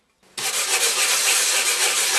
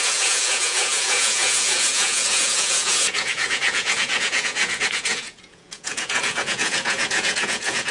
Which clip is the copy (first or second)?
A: second